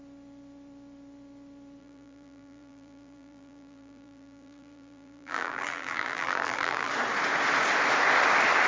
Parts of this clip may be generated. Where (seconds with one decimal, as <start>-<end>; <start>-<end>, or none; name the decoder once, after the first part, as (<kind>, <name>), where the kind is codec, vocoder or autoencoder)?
1.8-6.9 (vocoder, BigVGAN v2)